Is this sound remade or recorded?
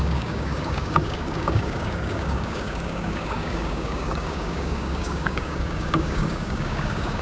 remade